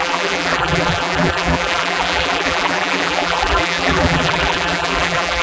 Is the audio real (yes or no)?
no